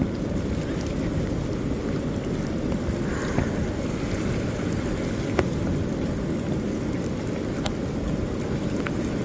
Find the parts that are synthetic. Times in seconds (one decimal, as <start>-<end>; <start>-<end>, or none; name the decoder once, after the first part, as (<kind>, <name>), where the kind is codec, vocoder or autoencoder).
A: none